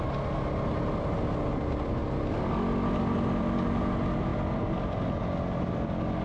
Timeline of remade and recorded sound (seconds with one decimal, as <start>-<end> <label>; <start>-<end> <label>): 0.0-6.2 recorded